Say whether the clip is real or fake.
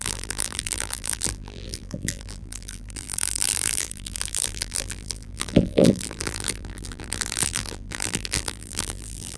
fake